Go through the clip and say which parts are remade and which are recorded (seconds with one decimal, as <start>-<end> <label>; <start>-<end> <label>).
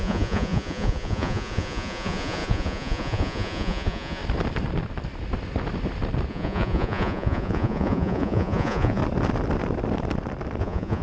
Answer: 0.0-4.2 remade; 4.2-6.3 recorded; 6.3-9.0 remade; 9.0-10.6 recorded; 10.6-11.0 remade